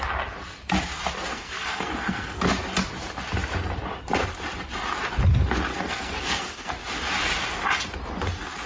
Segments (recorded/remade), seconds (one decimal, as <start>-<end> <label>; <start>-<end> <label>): 0.0-1.3 recorded; 1.3-2.4 remade; 2.4-5.7 recorded; 5.7-6.7 remade; 6.7-8.7 recorded